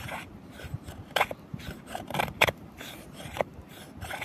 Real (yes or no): no